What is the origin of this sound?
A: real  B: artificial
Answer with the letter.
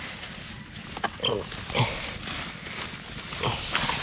A